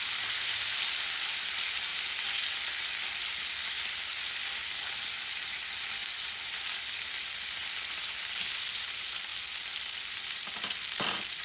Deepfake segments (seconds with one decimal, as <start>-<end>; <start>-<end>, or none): 0.0-1.9; 2.8-9.3; 10.0-11.4